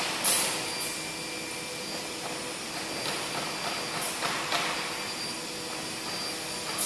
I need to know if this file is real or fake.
real